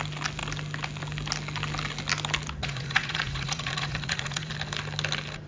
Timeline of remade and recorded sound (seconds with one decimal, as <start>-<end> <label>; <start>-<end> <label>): 0.0-2.6 recorded; 2.6-4.5 remade; 4.5-5.5 recorded